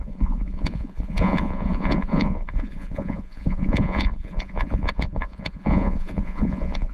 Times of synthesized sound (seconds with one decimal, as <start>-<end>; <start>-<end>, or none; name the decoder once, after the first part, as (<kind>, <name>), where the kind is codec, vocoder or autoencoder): 0.0-6.9 (vocoder, Vocos)